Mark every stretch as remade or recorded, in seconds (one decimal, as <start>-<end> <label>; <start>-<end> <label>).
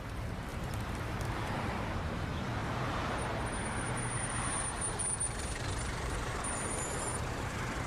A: 0.0-7.9 remade